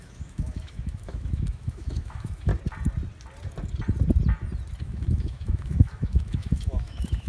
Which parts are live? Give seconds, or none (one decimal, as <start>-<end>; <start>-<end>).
2.5-4.8